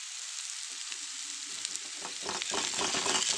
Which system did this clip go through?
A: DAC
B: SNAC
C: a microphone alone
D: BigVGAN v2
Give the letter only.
C